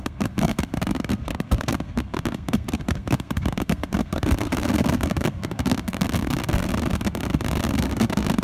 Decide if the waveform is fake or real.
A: fake